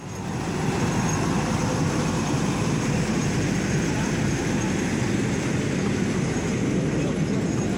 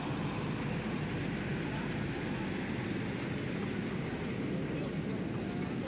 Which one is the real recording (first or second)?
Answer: second